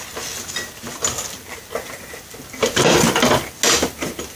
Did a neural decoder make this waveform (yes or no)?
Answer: no